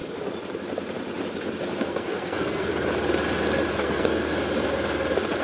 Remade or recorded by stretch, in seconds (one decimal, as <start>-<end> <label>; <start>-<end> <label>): 0.0-1.8 recorded; 1.8-2.7 remade; 2.7-3.7 recorded; 3.7-4.3 remade; 4.3-5.4 recorded